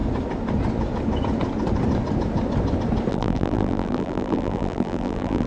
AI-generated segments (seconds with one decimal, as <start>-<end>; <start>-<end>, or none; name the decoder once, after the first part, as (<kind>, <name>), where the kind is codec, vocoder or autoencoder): 3.1-5.5 (vocoder, BigVGAN v2)